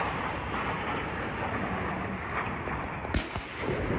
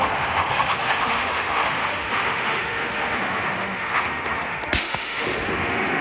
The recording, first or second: first